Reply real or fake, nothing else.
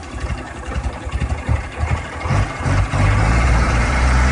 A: fake